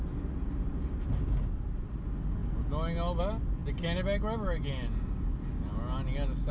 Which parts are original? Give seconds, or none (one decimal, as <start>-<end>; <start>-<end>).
0.0-6.5